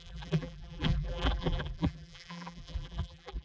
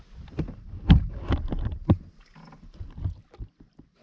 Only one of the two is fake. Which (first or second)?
first